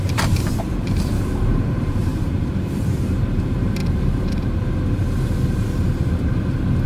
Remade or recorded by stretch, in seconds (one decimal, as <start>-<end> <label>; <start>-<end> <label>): 0.0-3.8 remade; 3.8-6.9 recorded